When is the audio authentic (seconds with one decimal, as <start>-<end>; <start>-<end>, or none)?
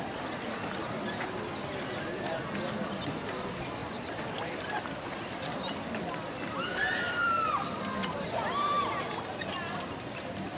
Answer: 0.0-3.8; 4.6-6.7; 8.9-10.6